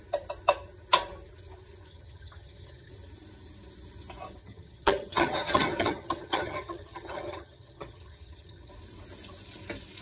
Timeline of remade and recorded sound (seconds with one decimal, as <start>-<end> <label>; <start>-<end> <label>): 0.0-1.9 recorded; 1.9-2.9 remade; 2.9-4.4 recorded; 4.4-8.7 remade; 8.7-10.0 recorded